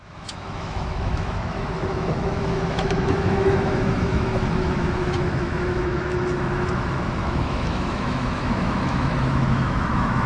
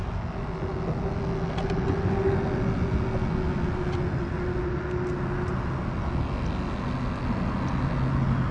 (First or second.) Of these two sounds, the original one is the second